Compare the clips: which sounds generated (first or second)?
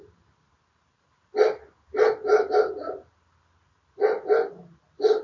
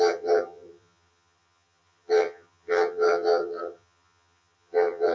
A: second